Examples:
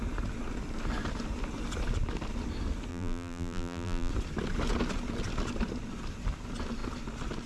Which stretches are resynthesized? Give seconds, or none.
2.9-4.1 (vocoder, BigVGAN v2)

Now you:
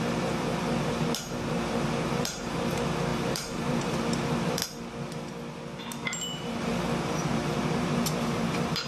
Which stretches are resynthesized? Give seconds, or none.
0.0-4.6 (vocoder, BigVGAN v2); 5.8-6.7; 7.3-8.9